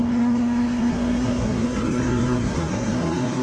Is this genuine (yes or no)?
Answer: no